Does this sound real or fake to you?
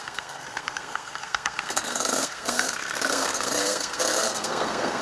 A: fake